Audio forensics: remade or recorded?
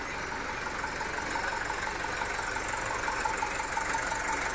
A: recorded